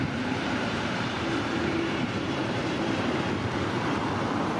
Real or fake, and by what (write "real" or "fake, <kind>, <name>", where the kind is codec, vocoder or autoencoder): fake, vocoder, BigVGAN v2